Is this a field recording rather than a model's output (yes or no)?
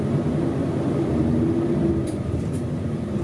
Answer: yes